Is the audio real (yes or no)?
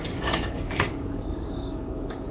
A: no